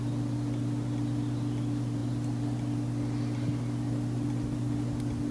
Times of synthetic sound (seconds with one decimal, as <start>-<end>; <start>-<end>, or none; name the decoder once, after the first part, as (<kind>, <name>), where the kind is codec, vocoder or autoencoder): none